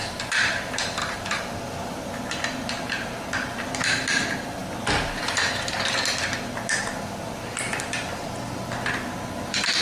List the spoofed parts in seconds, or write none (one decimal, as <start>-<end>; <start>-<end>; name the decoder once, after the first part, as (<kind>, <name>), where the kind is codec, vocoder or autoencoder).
0.0-0.6 (vocoder, BigVGAN v2); 1.0-1.6